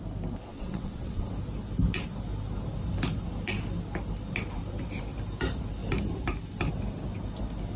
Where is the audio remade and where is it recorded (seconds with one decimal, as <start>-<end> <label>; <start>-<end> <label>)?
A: 0.0-0.5 recorded; 0.5-1.3 remade; 1.3-7.8 recorded